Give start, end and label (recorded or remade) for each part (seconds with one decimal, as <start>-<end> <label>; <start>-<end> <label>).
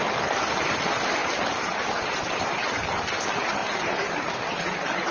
0.0-5.1 recorded